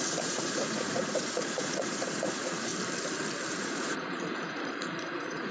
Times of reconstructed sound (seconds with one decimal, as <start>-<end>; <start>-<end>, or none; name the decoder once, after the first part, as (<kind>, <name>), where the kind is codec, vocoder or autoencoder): 0.0-2.7 (vocoder, Vocos); 3.6-5.5